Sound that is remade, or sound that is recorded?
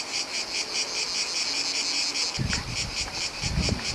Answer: recorded